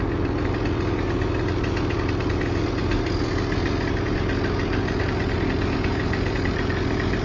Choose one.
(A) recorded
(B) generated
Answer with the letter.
A